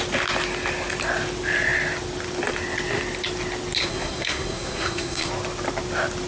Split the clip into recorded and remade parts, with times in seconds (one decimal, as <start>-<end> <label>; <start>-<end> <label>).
0.0-3.8 recorded; 3.8-5.3 remade; 5.3-6.3 recorded